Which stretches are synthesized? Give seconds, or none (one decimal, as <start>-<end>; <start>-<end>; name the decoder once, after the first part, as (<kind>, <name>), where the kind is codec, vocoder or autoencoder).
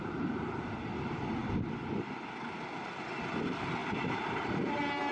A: none